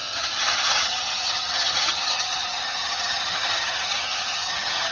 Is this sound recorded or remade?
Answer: remade